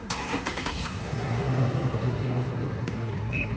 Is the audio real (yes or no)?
no